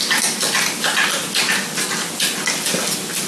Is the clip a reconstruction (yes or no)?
no